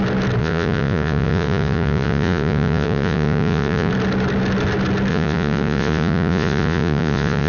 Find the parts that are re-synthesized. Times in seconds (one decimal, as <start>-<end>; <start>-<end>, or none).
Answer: 0.4-3.9; 5.1-7.5